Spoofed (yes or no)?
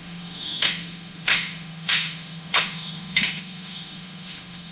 yes